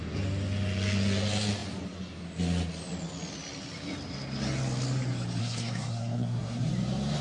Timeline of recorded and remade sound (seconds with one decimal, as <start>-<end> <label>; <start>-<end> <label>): 0.0-5.4 recorded; 5.4-6.7 remade; 6.7-7.2 recorded

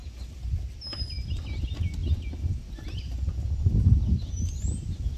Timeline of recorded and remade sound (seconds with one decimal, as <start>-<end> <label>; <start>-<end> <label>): 0.0-5.2 recorded

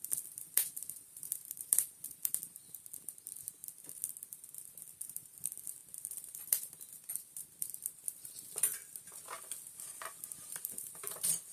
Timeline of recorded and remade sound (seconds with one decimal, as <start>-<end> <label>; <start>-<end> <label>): 0.0-8.8 remade; 8.8-10.6 recorded; 10.6-11.5 remade

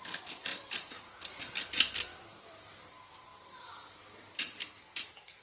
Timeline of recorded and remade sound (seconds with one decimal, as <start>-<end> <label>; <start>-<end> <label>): 0.0-0.5 recorded; 0.5-1.4 remade; 1.4-2.1 recorded; 2.1-2.7 remade; 2.7-3.3 recorded; 3.3-4.7 remade; 4.7-5.4 recorded

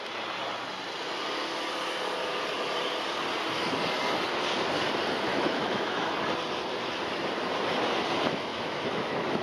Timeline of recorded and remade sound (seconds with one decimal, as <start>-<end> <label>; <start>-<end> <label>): 0.0-5.3 recorded; 5.3-6.2 remade; 6.2-8.5 recorded; 8.5-9.4 remade

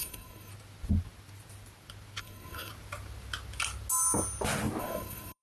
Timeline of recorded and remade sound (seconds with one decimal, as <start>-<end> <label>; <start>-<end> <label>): 0.0-0.5 remade; 0.5-2.2 recorded; 2.2-2.7 remade; 2.7-4.8 recorded; 4.8-5.4 remade